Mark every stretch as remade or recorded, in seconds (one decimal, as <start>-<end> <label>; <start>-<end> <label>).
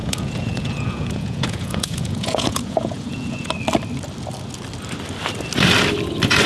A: 0.0-3.5 remade; 3.5-6.5 recorded